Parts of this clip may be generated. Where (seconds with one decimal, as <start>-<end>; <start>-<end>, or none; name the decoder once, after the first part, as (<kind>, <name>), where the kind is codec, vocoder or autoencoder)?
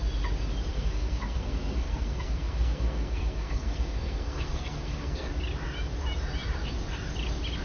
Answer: 0.7-5.3 (codec, SNAC)